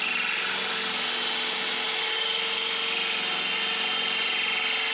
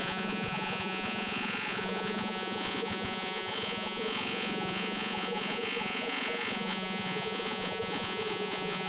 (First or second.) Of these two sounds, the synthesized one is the second